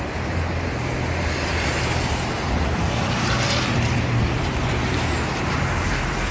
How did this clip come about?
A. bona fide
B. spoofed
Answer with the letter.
B